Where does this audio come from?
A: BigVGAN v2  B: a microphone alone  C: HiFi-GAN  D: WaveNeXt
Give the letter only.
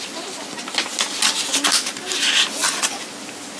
B